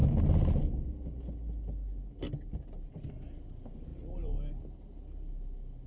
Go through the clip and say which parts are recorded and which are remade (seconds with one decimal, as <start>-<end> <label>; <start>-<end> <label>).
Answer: 0.0-3.9 recorded; 3.9-4.6 remade; 4.6-5.9 recorded